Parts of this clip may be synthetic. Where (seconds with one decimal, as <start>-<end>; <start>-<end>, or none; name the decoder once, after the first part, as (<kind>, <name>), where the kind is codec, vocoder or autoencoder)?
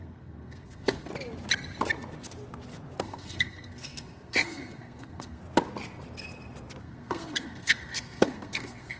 0.0-1.1 (codec, SNAC); 3.0-5.4; 6.8-9.0